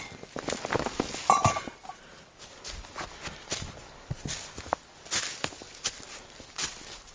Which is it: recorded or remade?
recorded